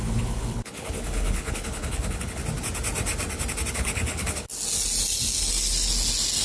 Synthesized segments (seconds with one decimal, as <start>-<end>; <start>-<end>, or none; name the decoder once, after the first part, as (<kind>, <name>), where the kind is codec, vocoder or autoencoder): 0.0-2.4 (codec, HILCodec); 3.7-4.5